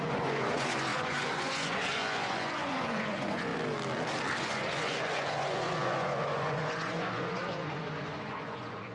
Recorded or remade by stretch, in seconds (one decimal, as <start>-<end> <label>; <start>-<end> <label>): 0.0-3.5 remade; 3.5-4.4 recorded; 4.4-8.9 remade